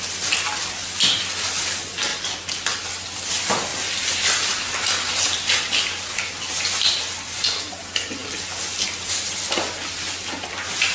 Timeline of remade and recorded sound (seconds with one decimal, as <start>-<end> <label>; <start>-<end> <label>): 0.0-10.9 recorded